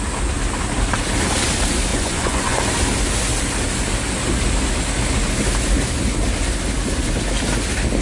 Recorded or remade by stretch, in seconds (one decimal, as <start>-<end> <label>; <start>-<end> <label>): 0.0-1.9 recorded; 1.9-2.6 remade; 2.6-8.0 recorded